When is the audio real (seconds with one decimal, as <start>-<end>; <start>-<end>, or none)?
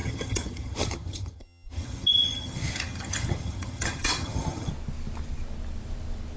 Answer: 4.7-6.4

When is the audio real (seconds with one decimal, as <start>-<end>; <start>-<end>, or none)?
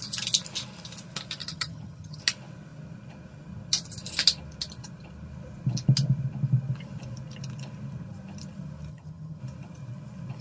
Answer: 0.0-1.4; 2.2-8.9; 9.4-10.4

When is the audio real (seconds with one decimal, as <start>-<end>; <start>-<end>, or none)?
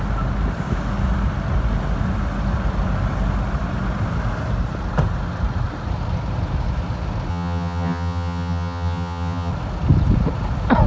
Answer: 0.0-7.3; 9.5-10.9